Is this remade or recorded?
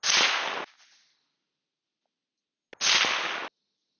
recorded